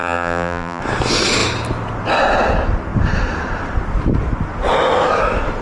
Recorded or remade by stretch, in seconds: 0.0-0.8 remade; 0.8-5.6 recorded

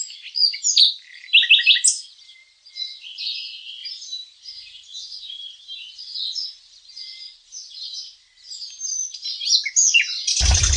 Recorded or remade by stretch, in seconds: 0.0-3.8 recorded; 3.8-6.0 remade; 6.0-10.8 recorded

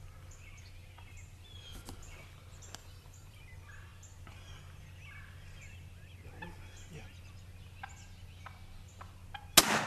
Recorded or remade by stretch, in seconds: 0.0-2.8 recorded; 2.8-3.4 remade; 3.4-9.9 recorded

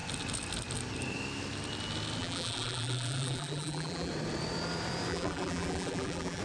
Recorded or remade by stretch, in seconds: 0.0-2.2 recorded; 2.2-4.1 remade; 4.1-5.1 recorded; 5.1-6.4 remade

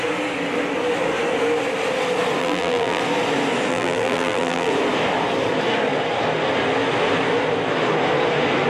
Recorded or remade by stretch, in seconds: 0.0-2.4 recorded; 2.4-3.0 remade; 3.0-3.7 recorded; 3.7-4.7 remade; 4.7-8.7 recorded

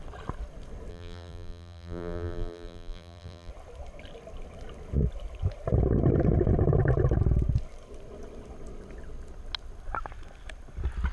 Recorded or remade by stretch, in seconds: 0.0-0.9 recorded; 0.9-3.5 remade; 3.5-11.1 recorded